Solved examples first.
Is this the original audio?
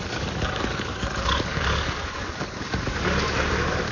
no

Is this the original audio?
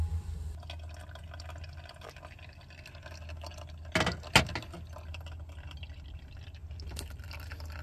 yes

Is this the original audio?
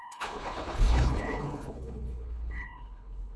no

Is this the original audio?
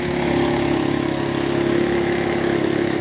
no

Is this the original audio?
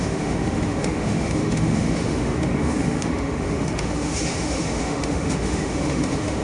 no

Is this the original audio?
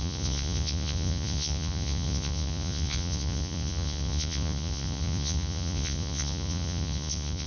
no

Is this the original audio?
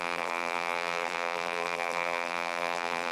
no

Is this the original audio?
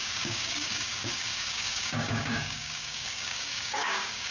no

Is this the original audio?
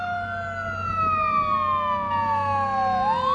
yes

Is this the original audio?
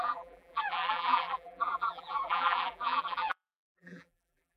no